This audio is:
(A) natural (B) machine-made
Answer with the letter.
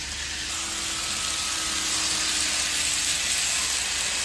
A